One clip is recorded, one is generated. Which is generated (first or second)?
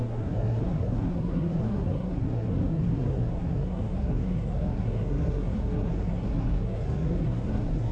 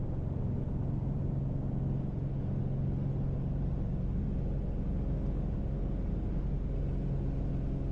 first